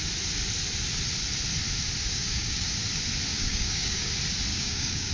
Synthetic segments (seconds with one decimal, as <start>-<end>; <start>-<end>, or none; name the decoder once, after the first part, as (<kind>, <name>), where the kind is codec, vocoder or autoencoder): 2.1-2.7 (codec, DAC); 3.3-4.1; 4.5-5.1